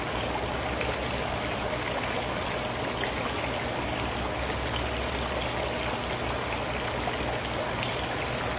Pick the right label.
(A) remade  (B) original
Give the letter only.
B